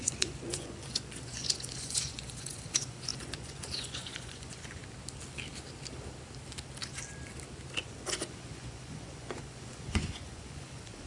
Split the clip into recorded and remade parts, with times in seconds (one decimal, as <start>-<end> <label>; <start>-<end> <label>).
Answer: 0.0-4.8 remade; 4.8-7.8 recorded; 7.8-11.1 remade